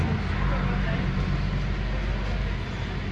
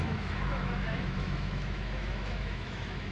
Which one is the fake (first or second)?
second